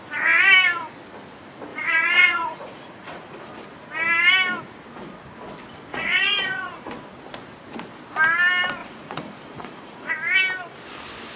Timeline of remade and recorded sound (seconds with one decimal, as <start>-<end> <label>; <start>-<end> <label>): 0.0-1.7 recorded; 1.7-3.5 remade; 3.5-5.9 recorded; 5.9-6.9 remade; 6.9-8.8 recorded; 8.8-10.1 remade; 10.1-11.4 recorded